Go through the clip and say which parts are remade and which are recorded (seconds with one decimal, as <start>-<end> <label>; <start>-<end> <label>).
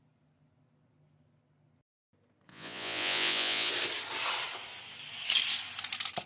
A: 0.0-2.5 recorded; 2.5-3.7 remade; 3.7-6.3 recorded